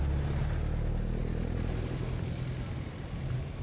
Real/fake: real